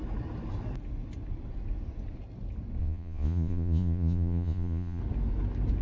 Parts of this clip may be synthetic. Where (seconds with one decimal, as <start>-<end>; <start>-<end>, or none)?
2.8-5.0